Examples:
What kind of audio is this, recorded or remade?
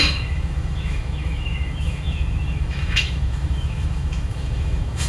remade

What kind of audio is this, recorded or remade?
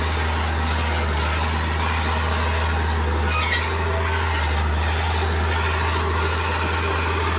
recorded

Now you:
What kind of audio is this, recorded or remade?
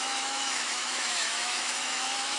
remade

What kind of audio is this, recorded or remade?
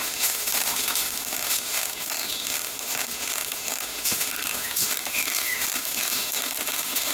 remade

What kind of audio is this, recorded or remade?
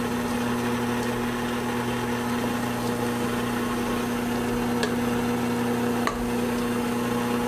recorded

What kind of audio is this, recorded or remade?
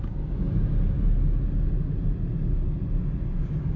recorded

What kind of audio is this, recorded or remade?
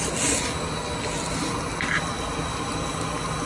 recorded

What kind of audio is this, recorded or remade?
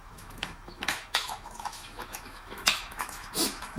remade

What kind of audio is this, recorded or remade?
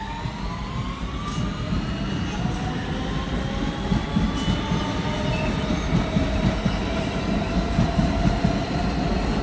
recorded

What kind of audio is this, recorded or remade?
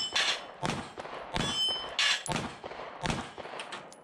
recorded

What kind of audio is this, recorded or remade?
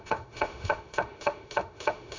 remade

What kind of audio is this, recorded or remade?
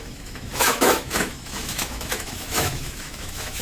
remade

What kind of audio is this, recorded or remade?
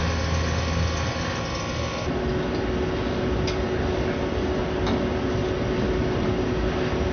recorded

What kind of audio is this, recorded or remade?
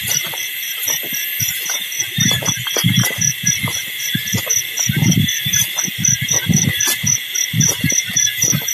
recorded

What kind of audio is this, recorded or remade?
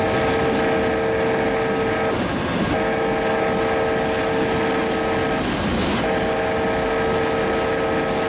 recorded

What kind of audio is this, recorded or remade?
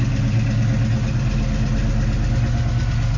recorded